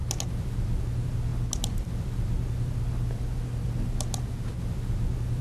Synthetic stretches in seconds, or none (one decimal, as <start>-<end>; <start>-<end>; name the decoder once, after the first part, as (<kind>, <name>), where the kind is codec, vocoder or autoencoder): none